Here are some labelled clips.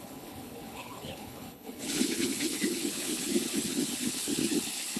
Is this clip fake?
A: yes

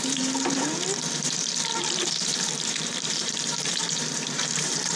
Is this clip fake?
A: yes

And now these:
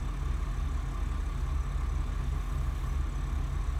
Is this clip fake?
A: no